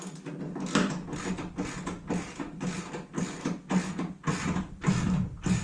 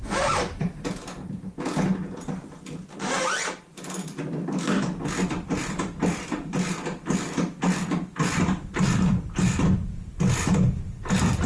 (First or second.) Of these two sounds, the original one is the first